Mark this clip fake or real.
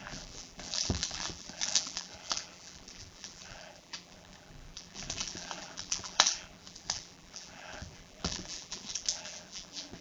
fake